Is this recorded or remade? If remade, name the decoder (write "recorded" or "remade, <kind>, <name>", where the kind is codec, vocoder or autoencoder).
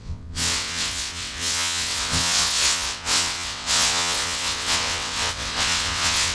remade, vocoder, WaveNeXt